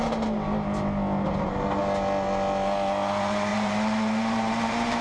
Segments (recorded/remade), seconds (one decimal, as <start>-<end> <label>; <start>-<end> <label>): 0.0-3.5 recorded; 3.5-5.0 remade